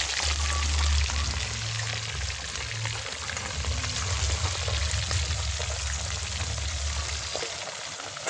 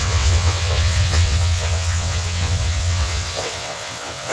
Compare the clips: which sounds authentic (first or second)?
first